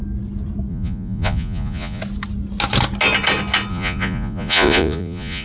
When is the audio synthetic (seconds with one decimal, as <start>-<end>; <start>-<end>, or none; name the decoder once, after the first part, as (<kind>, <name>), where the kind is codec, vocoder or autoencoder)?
0.7-2.0 (vocoder, Vocos); 3.7-5.4